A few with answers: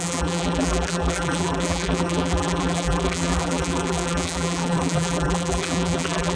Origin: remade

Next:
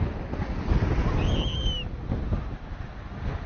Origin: recorded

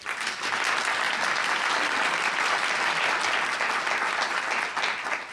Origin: recorded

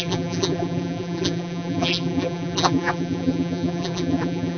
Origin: remade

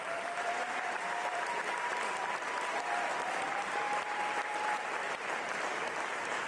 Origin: remade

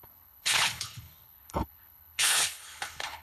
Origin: remade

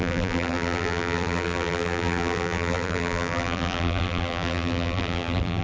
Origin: remade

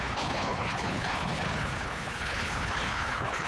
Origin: remade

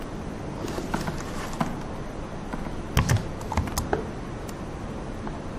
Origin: recorded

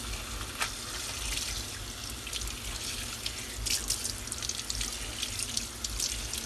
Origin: recorded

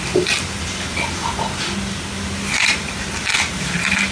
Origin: recorded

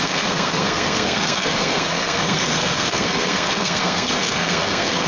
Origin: remade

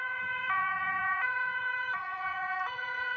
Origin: remade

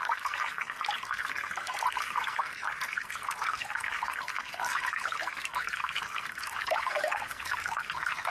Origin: remade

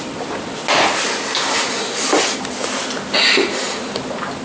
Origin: recorded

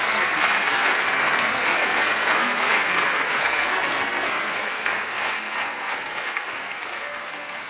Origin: remade